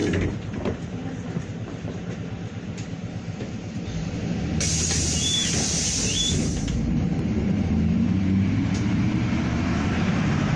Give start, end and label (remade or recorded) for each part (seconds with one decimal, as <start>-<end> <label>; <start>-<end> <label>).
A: 0.0-10.6 remade